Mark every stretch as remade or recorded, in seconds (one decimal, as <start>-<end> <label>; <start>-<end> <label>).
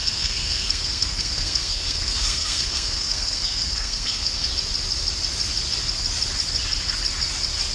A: 0.0-4.5 remade; 4.5-7.7 recorded